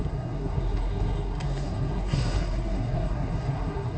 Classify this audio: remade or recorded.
remade